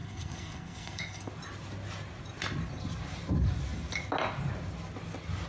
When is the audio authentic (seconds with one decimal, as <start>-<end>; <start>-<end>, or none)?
1.3-5.5